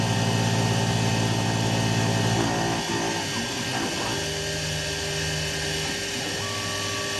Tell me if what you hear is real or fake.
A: real